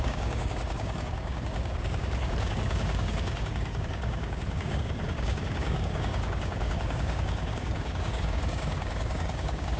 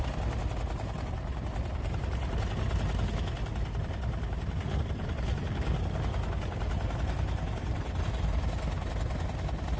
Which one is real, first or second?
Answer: second